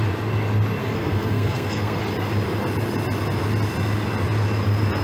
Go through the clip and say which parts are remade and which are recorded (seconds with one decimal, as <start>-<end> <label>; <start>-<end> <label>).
0.0-0.8 recorded; 0.8-2.0 remade; 2.0-5.0 recorded